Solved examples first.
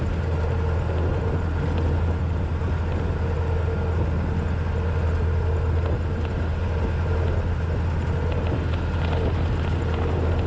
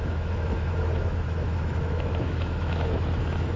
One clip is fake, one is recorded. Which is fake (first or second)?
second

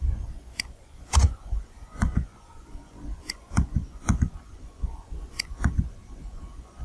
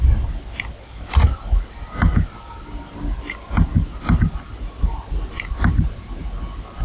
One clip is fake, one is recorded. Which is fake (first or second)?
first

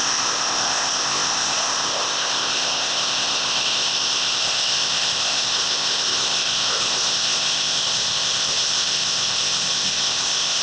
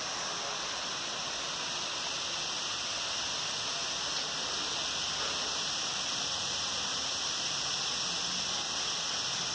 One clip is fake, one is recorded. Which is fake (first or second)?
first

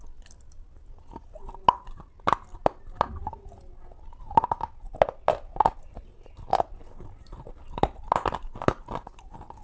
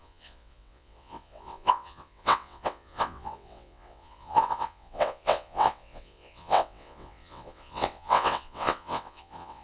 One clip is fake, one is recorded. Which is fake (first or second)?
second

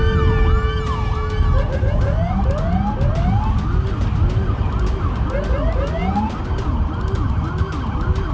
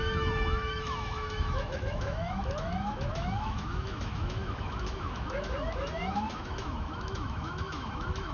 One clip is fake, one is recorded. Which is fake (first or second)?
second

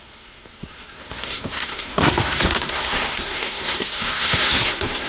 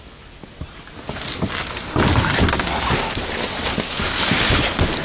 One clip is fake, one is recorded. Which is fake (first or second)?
first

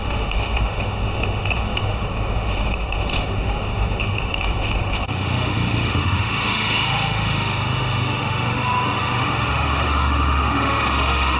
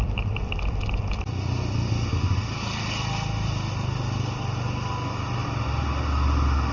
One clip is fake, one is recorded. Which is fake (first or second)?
first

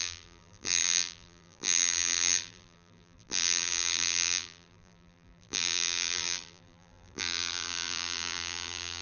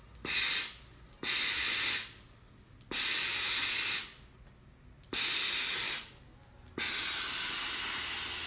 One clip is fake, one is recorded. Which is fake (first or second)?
first